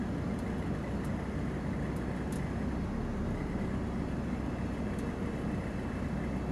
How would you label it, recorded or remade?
recorded